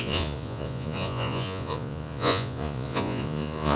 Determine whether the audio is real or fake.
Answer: fake